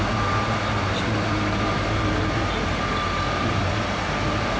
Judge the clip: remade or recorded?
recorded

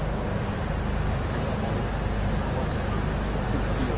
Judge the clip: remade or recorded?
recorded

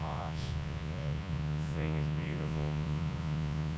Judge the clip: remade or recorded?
remade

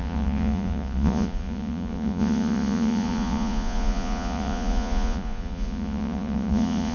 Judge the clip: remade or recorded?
remade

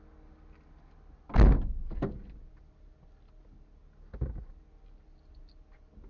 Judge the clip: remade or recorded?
recorded